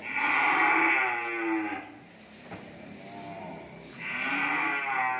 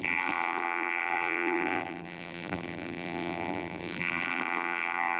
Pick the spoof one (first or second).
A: second